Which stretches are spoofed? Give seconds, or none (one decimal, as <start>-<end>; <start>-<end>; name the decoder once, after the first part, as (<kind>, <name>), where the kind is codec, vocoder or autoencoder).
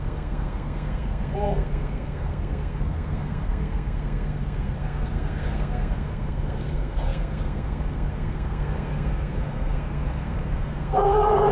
0.0-11.5 (codec, SNAC)